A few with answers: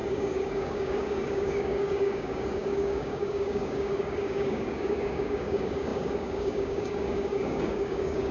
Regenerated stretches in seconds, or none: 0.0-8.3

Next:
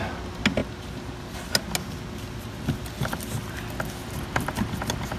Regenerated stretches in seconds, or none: none

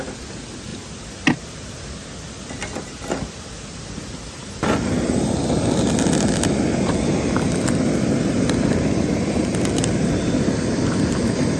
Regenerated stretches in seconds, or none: none

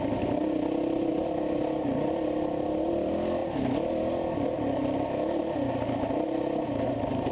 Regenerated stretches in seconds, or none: none

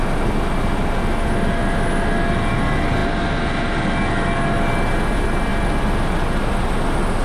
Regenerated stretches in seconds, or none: none

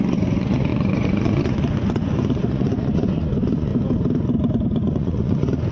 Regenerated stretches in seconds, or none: 0.0-3.7; 4.9-5.7